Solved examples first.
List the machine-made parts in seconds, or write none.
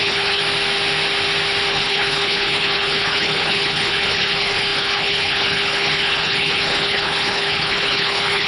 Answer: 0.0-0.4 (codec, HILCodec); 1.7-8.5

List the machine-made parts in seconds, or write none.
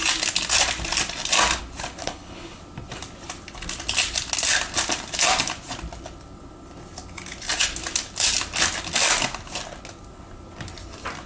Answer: 2.0-2.6 (codec, HILCodec)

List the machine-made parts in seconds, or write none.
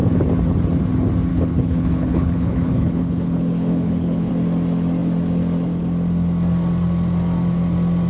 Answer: 1.3-4.3 (codec, HILCodec)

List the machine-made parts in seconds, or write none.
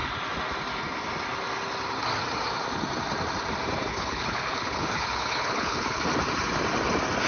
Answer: 3.9-6.0 (codec, HILCodec)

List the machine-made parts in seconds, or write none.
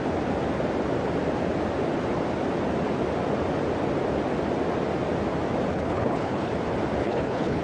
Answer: 5.7-6.5 (codec, HILCodec); 7.0-7.6